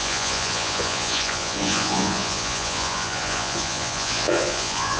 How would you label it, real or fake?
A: fake